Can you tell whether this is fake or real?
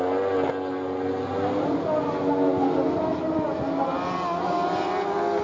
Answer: real